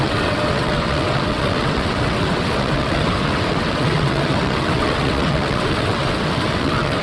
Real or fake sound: fake